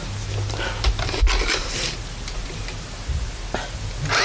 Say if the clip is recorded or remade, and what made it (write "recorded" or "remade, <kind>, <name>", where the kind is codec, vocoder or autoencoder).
recorded